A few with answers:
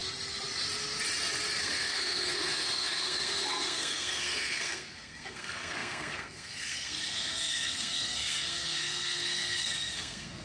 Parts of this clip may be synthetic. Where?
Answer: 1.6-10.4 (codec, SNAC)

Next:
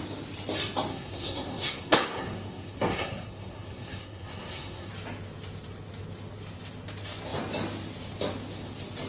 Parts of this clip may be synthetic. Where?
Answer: 0.9-4.9 (codec, SNAC)

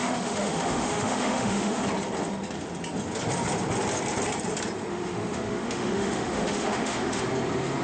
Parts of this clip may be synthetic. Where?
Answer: 0.0-1.8 (autoencoder, DAC-VAE); 4.9-7.2

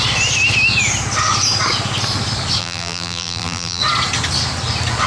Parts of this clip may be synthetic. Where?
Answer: 2.6-3.8 (vocoder, BigVGAN v2)

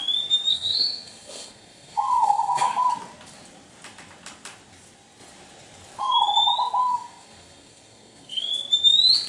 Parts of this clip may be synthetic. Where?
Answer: 0.5-2.9 (codec, SNAC); 6.8-8.5

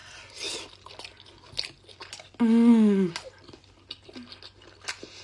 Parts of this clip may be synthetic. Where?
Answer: none

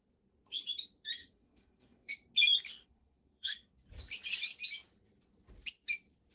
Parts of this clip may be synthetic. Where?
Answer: 1.2-2.1 (codec, SNAC); 2.8-3.7